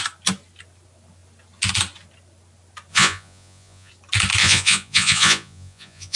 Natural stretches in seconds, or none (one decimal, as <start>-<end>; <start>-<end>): 0.0-2.9; 3.9-4.4